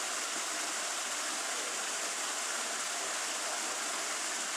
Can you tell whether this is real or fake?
real